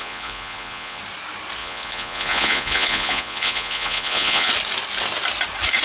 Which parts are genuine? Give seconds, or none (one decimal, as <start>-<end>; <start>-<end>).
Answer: 1.0-1.6; 4.5-5.8